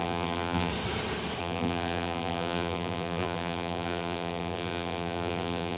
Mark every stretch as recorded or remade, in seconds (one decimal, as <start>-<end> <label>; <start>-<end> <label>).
0.0-0.7 remade; 0.7-1.4 recorded; 1.4-5.8 remade